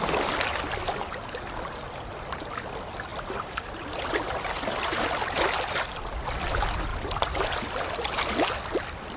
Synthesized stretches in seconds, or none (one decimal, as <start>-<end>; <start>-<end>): 3.1-5.2; 6.9-8.1